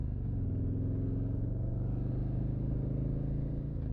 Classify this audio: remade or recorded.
recorded